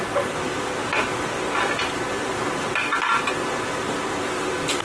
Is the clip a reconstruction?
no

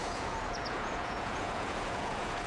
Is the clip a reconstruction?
yes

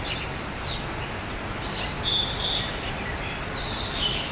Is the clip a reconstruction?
no